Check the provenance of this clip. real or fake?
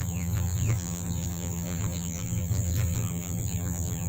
fake